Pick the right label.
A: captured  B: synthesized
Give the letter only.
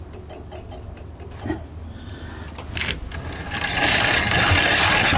A